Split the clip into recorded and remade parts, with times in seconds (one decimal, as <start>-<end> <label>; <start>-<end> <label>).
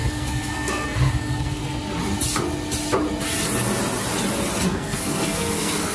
0.0-1.6 remade; 1.6-4.7 recorded; 4.7-5.9 remade